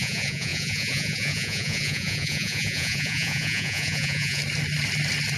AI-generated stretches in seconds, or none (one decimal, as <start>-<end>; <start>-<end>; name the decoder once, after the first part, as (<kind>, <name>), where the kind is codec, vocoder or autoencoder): 0.0-4.4 (vocoder, Vocos)